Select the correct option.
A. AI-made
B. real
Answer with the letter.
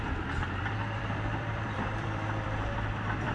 A